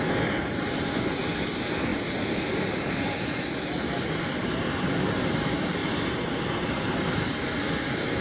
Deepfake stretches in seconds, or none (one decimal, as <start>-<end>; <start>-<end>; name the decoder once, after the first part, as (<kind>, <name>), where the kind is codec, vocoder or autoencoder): 0.4-1.2 (vocoder, BigVGAN v2); 1.9-2.9; 5.8-6.8